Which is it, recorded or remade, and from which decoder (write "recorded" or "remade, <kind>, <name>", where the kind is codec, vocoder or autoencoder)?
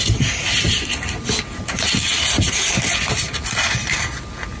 recorded